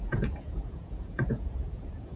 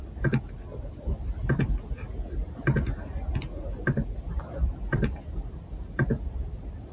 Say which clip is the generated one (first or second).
first